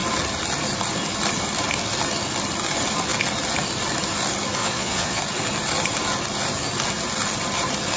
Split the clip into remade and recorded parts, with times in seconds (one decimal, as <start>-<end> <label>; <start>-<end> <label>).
0.0-4.6 recorded; 4.6-5.2 remade; 5.2-8.0 recorded